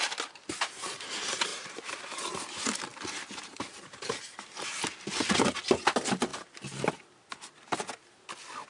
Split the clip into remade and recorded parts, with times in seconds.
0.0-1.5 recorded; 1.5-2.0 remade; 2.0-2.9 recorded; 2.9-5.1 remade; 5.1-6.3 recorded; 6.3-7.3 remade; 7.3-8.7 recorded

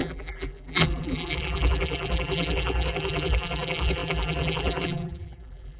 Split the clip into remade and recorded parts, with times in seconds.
0.0-5.8 remade

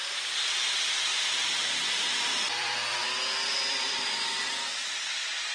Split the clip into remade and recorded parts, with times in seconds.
0.0-1.1 recorded; 1.1-4.4 remade; 4.4-5.5 recorded